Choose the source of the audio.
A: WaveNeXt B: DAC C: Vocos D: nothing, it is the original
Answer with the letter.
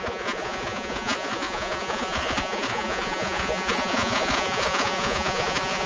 C